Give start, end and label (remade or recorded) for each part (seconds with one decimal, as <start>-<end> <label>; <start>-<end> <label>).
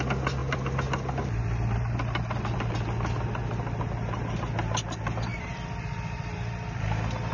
0.0-0.4 recorded; 0.4-2.7 remade; 2.7-5.3 recorded; 5.3-7.3 remade